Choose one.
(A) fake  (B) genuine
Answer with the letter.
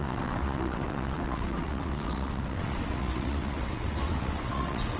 A